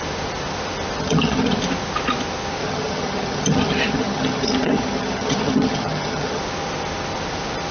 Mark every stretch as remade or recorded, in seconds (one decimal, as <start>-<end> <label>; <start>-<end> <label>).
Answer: 0.0-1.0 recorded; 1.0-1.6 remade; 1.6-2.6 recorded; 2.6-6.4 remade; 6.4-7.7 recorded